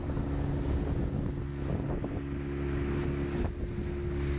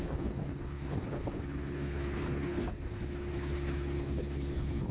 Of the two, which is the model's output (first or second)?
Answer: second